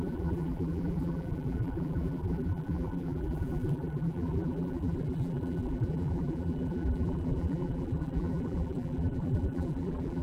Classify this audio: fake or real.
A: fake